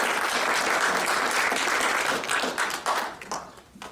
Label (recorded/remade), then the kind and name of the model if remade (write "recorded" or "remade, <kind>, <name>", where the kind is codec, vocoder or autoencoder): recorded